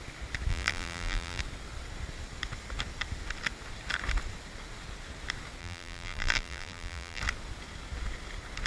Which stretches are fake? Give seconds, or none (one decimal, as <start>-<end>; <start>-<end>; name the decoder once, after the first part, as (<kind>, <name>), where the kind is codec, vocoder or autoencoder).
0.5-1.4 (vocoder, BigVGAN v2); 5.6-7.2